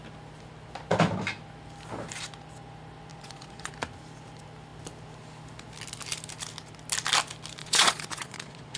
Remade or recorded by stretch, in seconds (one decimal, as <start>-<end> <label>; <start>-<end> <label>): 0.0-3.1 recorded; 3.1-3.7 remade; 3.7-7.6 recorded; 7.6-8.8 remade